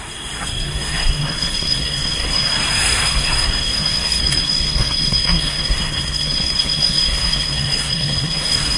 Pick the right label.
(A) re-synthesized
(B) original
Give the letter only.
A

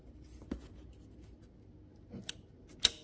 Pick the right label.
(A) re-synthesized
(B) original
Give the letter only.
B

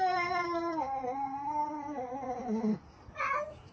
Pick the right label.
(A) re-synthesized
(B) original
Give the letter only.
B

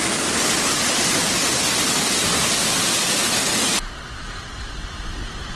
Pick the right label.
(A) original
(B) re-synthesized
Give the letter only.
B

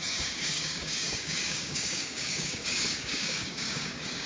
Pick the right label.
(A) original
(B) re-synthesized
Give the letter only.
B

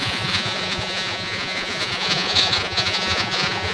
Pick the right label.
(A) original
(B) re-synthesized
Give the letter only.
B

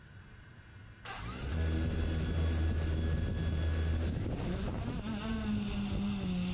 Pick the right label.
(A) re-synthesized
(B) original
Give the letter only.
B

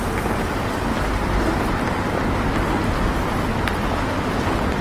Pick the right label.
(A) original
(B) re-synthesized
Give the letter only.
A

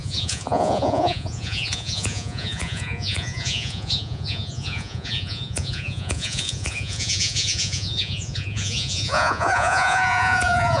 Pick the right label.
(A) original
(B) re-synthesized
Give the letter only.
B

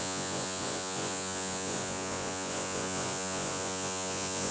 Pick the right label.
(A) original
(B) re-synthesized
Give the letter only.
B